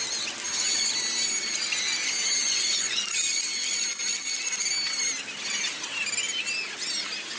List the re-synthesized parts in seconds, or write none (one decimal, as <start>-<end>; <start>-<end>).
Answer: 2.4-3.0